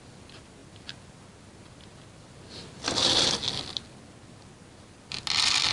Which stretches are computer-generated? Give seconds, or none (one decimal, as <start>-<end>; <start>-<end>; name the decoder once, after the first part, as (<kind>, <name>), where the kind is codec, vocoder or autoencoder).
none